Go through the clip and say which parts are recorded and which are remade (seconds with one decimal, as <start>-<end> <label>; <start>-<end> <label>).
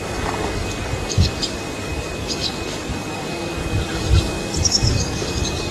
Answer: 0.0-5.7 remade